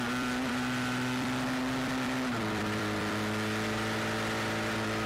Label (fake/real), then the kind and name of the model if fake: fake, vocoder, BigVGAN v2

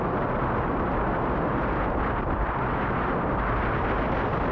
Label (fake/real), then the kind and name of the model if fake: real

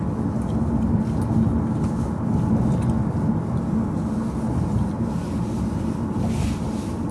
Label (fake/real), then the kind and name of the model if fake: real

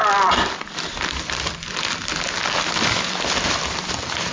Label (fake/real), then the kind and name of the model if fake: fake, vocoder, BigVGAN v2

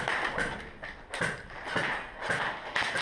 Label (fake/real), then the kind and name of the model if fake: real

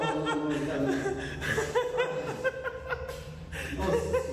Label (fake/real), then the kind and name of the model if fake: real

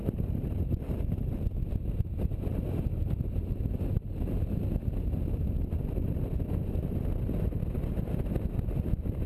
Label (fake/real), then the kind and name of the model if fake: real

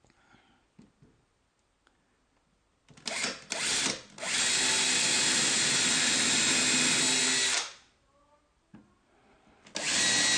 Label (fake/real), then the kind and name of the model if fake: real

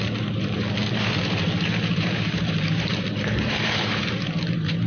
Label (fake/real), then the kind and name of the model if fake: fake, vocoder, BigVGAN v2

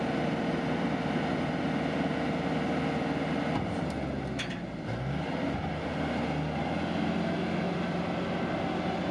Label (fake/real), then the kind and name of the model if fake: real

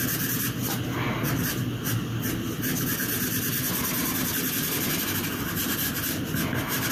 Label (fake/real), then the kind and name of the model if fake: real